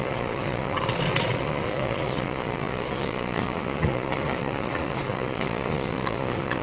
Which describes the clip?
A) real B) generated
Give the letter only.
B